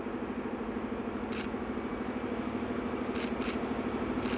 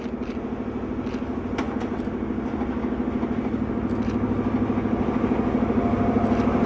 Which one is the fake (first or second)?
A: first